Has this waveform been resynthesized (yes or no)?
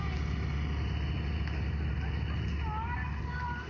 no